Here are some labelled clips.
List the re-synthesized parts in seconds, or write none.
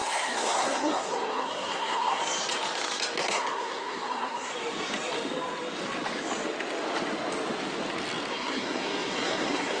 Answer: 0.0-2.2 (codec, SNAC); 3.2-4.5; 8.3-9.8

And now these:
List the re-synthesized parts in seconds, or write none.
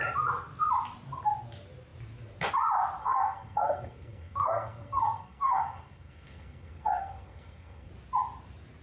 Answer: 3.0-7.9 (codec, SNAC)